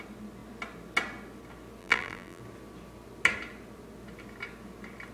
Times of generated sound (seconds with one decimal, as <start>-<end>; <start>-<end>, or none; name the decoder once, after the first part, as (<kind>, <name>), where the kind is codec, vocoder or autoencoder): 1.8-2.4 (vocoder, BigVGAN v2)